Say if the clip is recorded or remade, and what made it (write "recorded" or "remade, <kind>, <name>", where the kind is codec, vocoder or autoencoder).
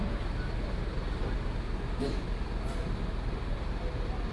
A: recorded